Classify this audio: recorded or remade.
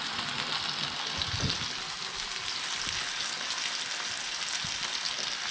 recorded